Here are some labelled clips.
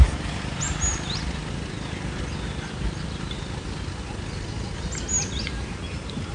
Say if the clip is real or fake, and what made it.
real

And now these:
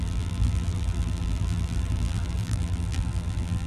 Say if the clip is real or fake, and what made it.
fake, vocoder, BigVGAN v2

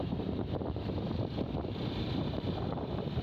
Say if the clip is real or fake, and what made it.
fake, vocoder, BigVGAN v2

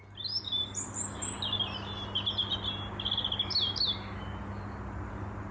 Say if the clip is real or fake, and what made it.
real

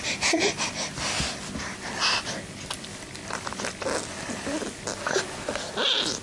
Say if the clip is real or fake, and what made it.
real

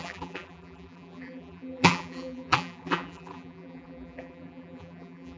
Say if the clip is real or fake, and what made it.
fake, vocoder, BigVGAN v2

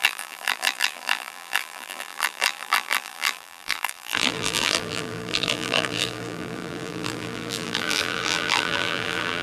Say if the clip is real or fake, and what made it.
fake, vocoder, BigVGAN v2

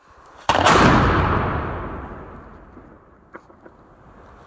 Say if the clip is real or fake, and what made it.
real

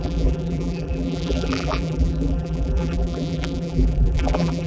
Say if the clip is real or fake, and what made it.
fake, vocoder, BigVGAN v2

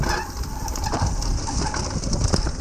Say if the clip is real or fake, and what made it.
real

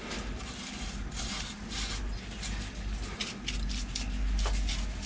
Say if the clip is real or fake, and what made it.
real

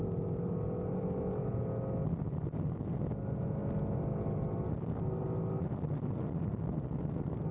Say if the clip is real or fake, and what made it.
real